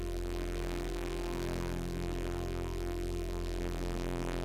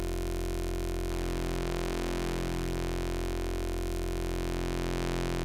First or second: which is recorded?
second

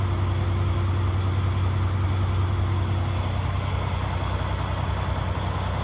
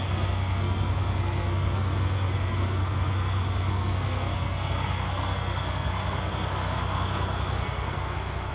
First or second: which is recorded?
first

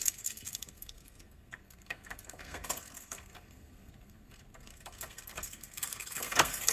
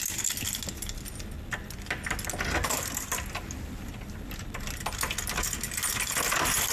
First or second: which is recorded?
second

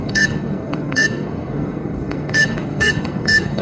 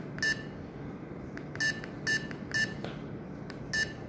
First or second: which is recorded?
second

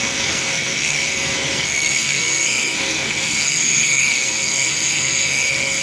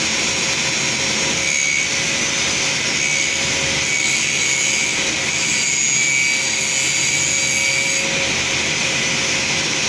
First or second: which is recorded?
second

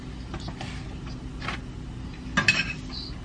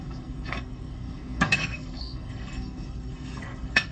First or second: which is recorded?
first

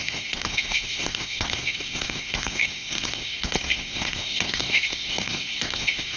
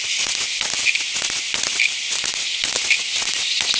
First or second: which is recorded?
second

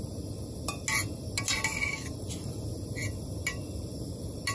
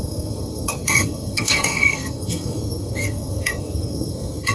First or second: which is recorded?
first